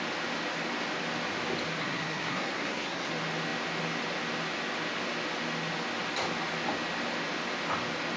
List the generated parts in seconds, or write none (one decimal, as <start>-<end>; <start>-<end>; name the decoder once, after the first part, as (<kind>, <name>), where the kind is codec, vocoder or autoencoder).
1.8-3.1 (codec, SNAC)